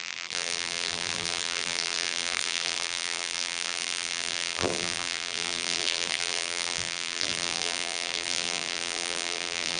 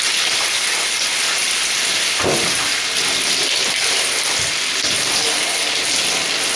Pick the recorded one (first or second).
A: second